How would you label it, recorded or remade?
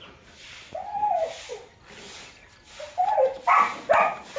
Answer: recorded